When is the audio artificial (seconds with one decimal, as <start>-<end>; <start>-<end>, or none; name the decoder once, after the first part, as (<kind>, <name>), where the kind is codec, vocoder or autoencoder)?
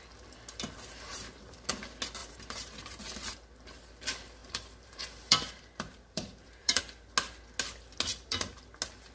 1.1-1.7 (vocoder, BigVGAN v2); 2.2-3.0; 4.4-6.8; 8.1-8.7